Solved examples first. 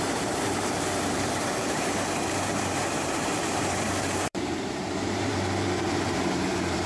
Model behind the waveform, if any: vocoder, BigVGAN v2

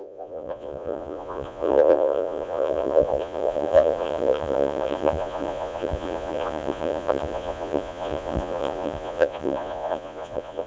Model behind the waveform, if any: vocoder, Vocos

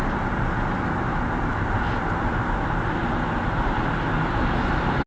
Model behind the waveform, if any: none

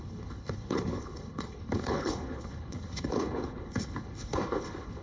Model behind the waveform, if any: codec, HILCodec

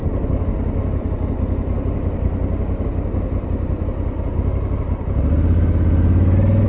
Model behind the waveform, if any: none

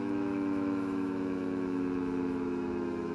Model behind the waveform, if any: autoencoder, DAC-VAE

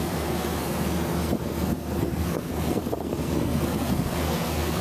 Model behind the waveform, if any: codec, SNAC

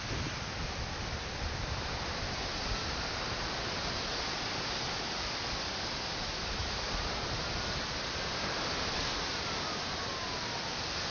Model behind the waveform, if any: none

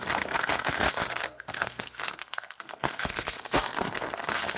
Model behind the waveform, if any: codec, SNAC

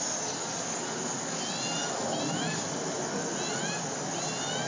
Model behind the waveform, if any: none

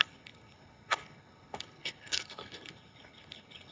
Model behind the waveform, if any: codec, HILCodec